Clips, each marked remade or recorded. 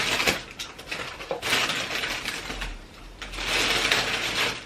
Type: recorded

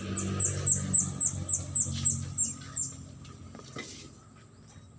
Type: recorded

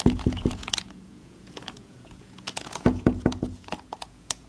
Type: remade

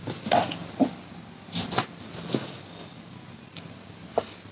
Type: recorded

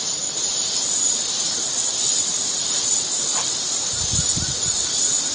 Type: remade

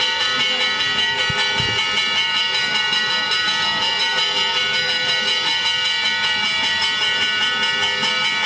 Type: recorded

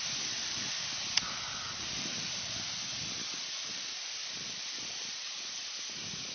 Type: recorded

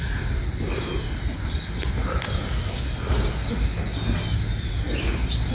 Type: recorded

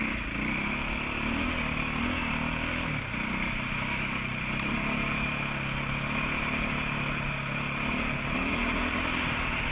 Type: recorded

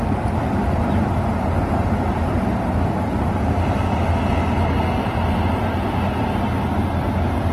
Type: recorded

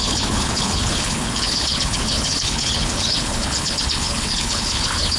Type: remade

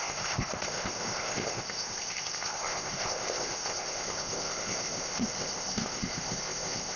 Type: remade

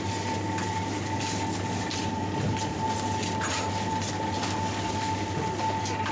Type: recorded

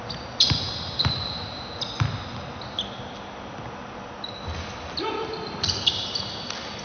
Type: recorded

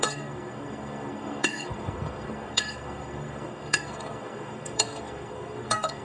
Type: remade